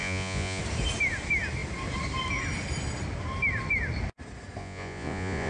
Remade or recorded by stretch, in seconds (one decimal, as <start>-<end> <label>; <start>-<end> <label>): 0.0-0.6 remade; 0.6-4.6 recorded; 4.6-5.5 remade